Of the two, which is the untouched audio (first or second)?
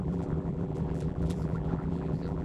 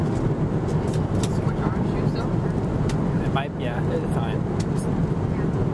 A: second